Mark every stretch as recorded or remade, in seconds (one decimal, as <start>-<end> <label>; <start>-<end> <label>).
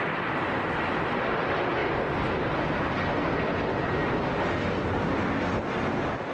0.0-6.3 recorded